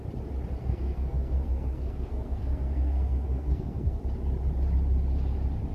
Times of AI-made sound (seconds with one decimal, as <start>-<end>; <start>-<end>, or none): 0.6-4.0